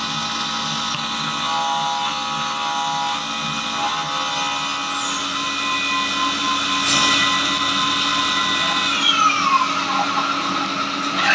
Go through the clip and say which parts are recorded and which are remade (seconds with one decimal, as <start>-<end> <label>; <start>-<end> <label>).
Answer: 0.0-11.3 recorded